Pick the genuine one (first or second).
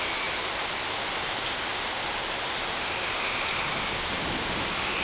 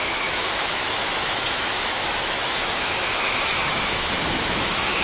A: first